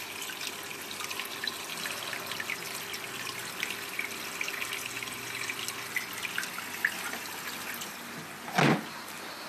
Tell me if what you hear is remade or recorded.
recorded